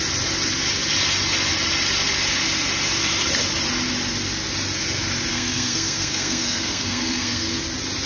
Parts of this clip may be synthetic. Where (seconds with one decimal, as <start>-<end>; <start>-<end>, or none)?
5.3-7.6